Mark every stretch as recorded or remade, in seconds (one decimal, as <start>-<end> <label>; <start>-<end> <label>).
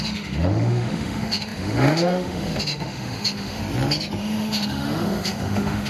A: 0.0-3.6 remade; 3.6-4.2 recorded; 4.2-5.9 remade